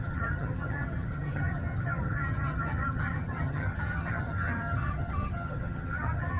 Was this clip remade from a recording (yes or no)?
yes